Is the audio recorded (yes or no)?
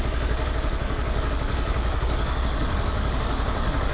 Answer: no